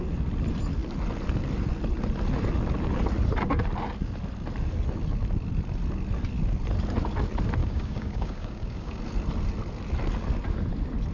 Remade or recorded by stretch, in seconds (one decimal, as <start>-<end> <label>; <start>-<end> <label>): 0.0-7.6 recorded; 7.6-9.0 remade; 9.0-11.1 recorded